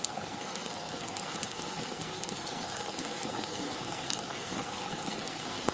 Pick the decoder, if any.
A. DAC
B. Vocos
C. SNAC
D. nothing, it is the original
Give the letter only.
C